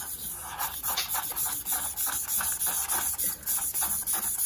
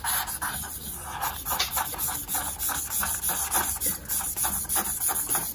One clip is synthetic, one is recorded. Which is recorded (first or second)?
second